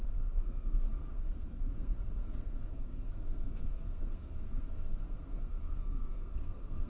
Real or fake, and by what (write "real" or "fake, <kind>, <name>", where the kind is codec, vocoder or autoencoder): fake, codec, SNAC